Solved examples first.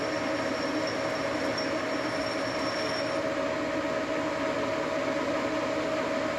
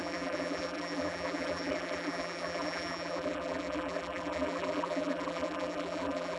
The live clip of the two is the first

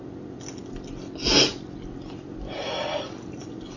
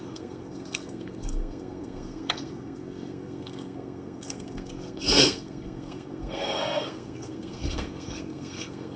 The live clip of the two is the first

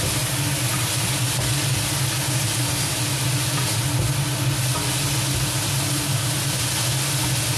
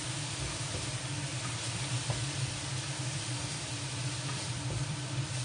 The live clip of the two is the first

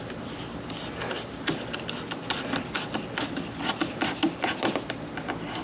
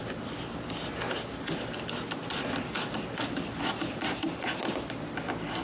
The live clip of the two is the second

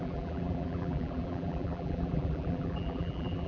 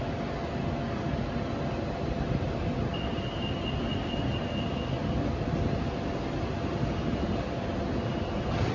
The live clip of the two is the second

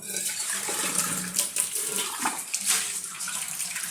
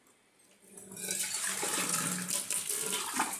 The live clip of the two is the second